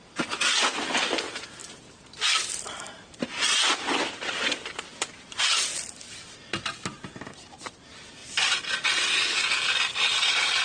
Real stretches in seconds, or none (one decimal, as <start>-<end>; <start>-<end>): 5.7-7.2; 8.2-8.9

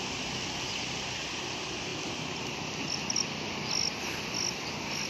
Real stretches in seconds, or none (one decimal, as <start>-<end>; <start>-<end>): 0.0-5.1

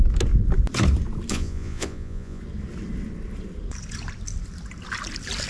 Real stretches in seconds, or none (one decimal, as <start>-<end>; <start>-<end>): 0.0-1.3; 2.4-5.5

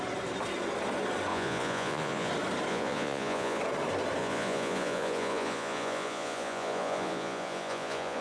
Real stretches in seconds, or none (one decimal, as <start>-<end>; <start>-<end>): 0.0-1.3; 2.3-2.7; 3.6-4.2

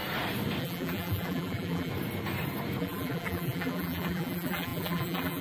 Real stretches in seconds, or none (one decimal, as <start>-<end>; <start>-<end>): 0.0-0.6; 1.9-2.8

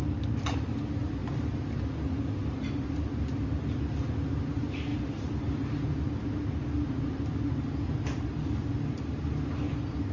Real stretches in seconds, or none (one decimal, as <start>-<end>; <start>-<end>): 0.0-4.9; 5.5-10.1

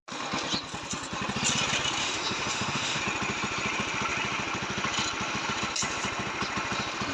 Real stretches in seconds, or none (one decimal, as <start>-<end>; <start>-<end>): 0.0-2.0; 3.0-7.1

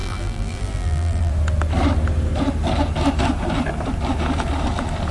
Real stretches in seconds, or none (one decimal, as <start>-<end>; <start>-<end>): 1.3-5.1